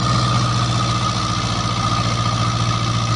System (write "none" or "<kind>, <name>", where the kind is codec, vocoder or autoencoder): none